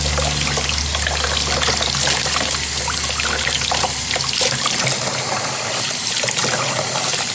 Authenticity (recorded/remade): recorded